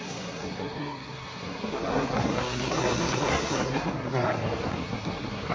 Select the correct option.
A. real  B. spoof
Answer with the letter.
B